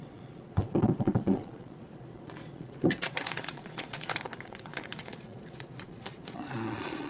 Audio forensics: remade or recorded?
remade